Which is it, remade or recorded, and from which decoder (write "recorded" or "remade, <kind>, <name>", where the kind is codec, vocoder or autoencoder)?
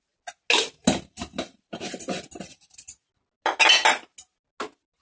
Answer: recorded